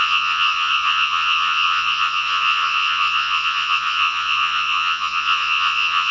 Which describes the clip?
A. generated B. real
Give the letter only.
A